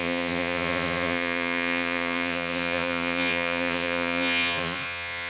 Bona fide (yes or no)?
no